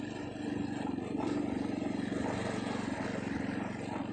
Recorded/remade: recorded